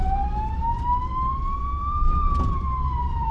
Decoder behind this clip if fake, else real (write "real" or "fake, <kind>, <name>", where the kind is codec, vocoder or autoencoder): fake, vocoder, BigVGAN v2